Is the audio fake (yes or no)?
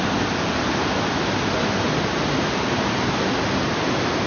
no